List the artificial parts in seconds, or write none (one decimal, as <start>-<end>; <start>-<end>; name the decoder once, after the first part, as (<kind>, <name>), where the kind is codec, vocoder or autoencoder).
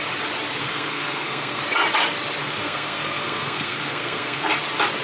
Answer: 0.6-1.6 (codec, SNAC); 2.4-4.5